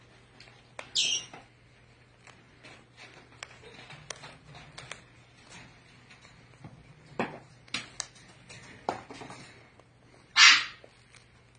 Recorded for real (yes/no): yes